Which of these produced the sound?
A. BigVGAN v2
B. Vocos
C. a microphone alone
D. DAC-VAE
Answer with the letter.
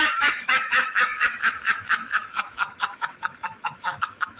D